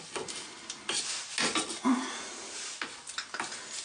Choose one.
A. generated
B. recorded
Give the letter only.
B